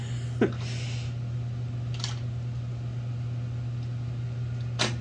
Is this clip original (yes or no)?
yes